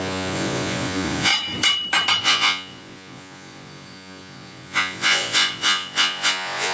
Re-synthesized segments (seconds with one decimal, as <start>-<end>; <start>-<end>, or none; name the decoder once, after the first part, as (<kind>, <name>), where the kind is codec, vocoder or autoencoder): 0.0-1.3 (vocoder, Vocos); 2.2-6.7